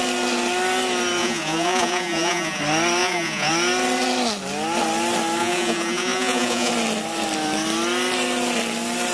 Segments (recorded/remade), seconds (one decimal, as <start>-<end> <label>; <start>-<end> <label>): 0.0-1.2 recorded; 1.2-2.6 remade; 2.6-3.0 recorded; 3.0-3.5 remade; 3.5-5.4 recorded; 5.4-6.7 remade; 6.7-9.1 recorded